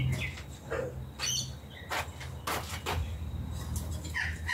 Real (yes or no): yes